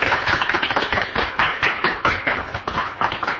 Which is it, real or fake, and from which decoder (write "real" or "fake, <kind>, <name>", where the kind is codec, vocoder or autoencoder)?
fake, codec, HILCodec